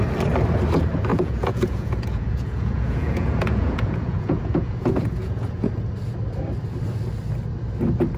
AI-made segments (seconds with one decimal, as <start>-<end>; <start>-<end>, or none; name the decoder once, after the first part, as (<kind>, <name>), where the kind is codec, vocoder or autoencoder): 1.1-5.7 (vocoder, Vocos)